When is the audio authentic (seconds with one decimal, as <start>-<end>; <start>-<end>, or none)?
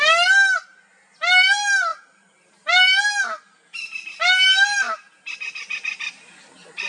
0.0-6.9